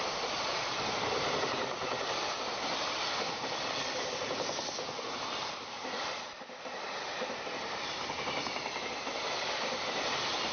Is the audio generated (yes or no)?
yes